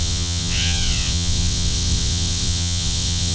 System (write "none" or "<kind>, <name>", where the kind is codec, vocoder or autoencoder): vocoder, WaveNeXt